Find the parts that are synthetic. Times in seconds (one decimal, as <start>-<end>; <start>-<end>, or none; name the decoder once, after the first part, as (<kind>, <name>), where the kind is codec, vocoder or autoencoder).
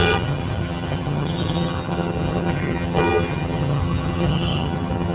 0.0-5.1 (vocoder, HiFi-GAN)